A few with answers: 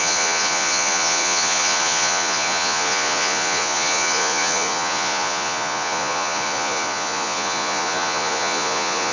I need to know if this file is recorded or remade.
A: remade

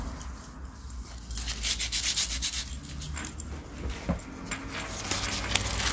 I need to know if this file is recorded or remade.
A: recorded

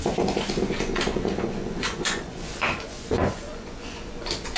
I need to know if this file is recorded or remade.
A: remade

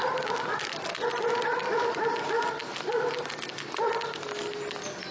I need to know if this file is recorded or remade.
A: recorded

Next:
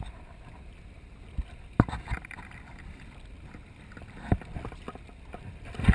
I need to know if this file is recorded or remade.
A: recorded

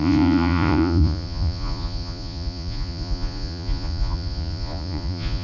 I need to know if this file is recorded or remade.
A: remade